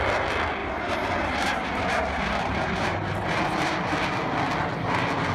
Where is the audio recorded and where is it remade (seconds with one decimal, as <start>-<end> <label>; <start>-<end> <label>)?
0.0-0.6 recorded; 0.6-3.8 remade; 3.8-5.3 recorded